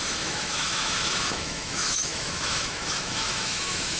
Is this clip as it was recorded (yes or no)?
no